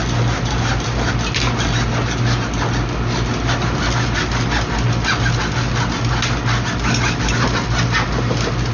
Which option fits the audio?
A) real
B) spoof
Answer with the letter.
A